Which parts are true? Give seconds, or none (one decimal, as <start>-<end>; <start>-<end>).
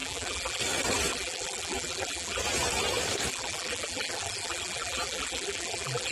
0.6-1.1; 2.4-3.3